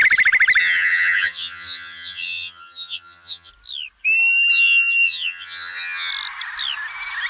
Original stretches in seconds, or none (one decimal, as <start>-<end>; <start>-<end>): 0.0-0.6; 3.5-4.5; 6.1-7.3